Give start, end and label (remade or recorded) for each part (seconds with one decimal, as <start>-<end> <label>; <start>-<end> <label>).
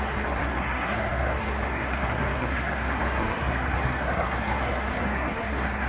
0.0-5.9 remade